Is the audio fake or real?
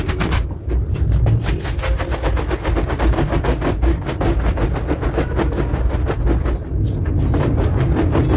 real